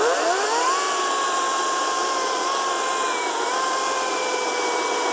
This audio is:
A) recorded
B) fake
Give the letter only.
B